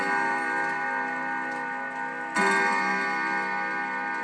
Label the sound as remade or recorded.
recorded